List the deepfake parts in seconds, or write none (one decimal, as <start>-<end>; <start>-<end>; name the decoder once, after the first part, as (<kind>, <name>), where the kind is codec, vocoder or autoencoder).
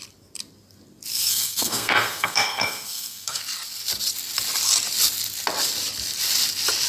1.1-3.4 (codec, SNAC)